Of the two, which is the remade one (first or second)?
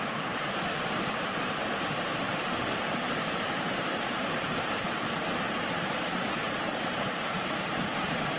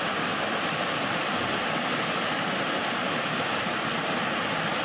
first